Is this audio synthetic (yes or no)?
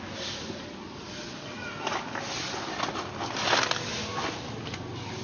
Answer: no